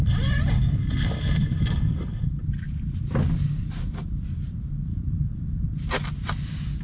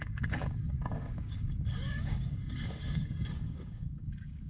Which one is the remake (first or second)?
second